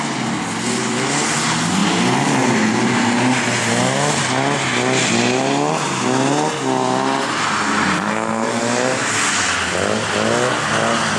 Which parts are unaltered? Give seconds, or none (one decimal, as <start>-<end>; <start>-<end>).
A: 0.0-8.1; 8.6-11.2